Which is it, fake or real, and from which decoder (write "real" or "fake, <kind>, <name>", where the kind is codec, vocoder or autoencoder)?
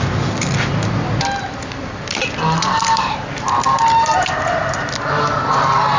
real